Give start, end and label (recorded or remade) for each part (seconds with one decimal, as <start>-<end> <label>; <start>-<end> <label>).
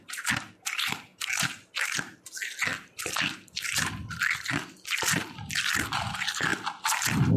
0.0-1.1 remade; 1.1-2.0 recorded; 2.0-7.4 remade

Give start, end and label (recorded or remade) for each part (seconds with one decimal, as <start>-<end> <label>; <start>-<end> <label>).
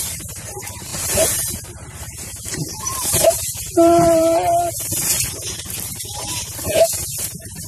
0.0-7.7 remade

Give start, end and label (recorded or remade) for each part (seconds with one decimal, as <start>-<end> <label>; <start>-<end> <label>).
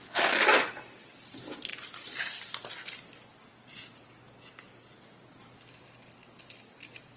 0.0-1.7 recorded; 1.7-2.7 remade; 2.7-7.2 recorded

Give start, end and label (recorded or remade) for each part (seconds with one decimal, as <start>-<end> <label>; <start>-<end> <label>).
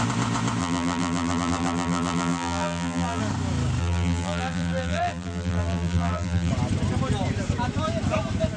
0.0-0.6 recorded; 0.6-3.2 remade; 3.2-3.8 recorded; 3.8-6.5 remade; 6.5-8.6 recorded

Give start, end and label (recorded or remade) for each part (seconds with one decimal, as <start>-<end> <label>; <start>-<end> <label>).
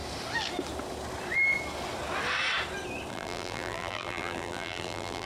0.0-3.1 recorded; 3.1-5.2 remade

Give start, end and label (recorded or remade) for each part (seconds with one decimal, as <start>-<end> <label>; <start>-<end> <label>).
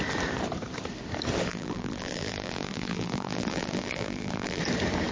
0.0-1.5 recorded; 1.5-4.6 remade; 4.6-5.1 recorded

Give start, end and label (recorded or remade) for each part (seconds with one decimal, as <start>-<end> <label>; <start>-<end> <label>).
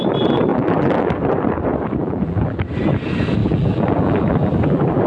0.0-0.5 recorded; 0.5-1.1 remade; 1.1-2.0 recorded; 2.0-2.6 remade; 2.6-3.4 recorded; 3.4-5.1 remade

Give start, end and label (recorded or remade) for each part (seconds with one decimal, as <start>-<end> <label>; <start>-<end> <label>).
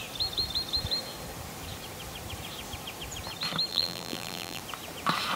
0.0-3.7 recorded; 3.7-4.6 remade; 4.6-5.4 recorded